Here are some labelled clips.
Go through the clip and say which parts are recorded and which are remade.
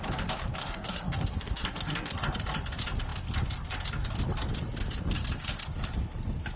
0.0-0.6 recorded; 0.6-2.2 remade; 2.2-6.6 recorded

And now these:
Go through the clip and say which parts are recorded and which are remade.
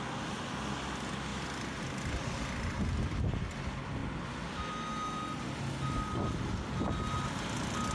0.0-7.9 recorded